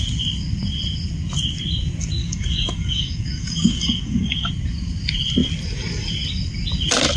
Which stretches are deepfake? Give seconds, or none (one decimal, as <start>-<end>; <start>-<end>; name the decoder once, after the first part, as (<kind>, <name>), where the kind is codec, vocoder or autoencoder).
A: 2.2-4.5 (codec, DAC)